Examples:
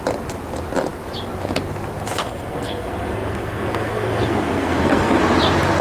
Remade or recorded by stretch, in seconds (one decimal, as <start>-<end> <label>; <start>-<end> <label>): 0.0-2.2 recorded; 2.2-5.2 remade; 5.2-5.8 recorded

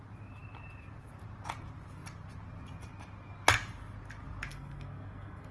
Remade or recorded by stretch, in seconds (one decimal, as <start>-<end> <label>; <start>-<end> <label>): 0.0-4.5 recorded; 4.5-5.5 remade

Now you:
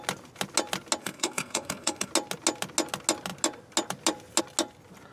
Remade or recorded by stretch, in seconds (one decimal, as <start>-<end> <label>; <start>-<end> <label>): 0.0-1.0 recorded; 1.0-2.1 remade; 2.1-5.1 recorded

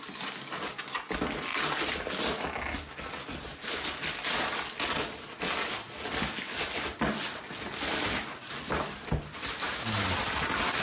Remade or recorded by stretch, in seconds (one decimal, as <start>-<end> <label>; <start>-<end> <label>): 0.0-10.8 recorded

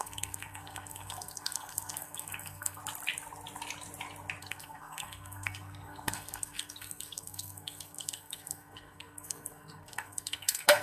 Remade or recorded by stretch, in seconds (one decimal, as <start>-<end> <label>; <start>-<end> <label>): 0.0-2.8 remade; 2.8-4.4 recorded; 4.4-10.8 remade

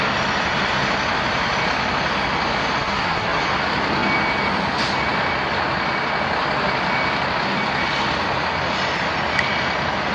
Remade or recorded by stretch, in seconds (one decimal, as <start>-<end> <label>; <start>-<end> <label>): 0.0-2.8 recorded; 2.8-3.4 remade; 3.4-10.1 recorded

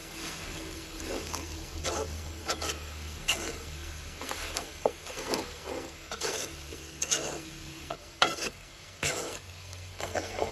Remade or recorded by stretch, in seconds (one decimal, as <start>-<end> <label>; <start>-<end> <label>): 0.0-10.5 remade